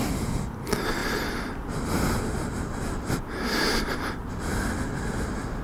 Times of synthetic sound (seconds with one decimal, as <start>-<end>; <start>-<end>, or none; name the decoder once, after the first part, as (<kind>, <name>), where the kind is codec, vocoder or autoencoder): none